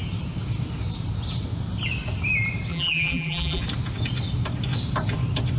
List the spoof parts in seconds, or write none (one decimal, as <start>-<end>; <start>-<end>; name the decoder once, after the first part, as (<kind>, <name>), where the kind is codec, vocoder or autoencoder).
2.7-3.6 (vocoder, BigVGAN v2)

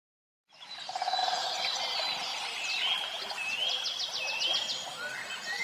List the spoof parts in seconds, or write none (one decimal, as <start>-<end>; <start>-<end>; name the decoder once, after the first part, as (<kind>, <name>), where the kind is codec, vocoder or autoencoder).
1.2-1.8 (vocoder, BigVGAN v2)

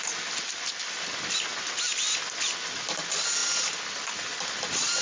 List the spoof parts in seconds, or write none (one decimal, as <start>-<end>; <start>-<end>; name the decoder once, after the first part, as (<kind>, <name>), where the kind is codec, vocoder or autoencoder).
none

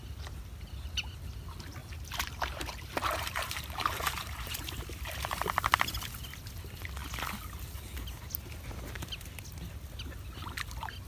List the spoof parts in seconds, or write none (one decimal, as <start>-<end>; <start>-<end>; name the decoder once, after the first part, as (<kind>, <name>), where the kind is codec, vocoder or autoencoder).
1.8-4.8 (vocoder, BigVGAN v2)

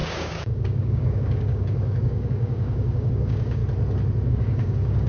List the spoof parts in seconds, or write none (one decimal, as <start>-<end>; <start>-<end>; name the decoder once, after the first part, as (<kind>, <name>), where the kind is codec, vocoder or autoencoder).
0.0-3.6 (codec, DAC); 4.3-5.1

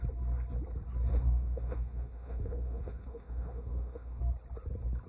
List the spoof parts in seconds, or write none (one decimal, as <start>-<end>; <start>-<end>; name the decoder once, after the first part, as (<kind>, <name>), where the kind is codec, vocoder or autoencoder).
1.1-4.2 (autoencoder, DAC-VAE)

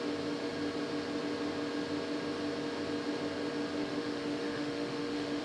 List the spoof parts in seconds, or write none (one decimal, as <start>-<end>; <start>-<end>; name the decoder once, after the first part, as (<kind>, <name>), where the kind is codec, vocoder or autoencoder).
3.8-5.4 (autoencoder, DAC-VAE)

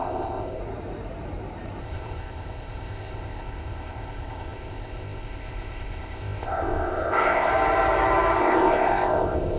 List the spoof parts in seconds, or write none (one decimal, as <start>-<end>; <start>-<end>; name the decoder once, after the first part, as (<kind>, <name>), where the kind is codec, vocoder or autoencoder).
0.0-0.6 (codec, ZipCodec); 1.8-7.5; 8.4-9.6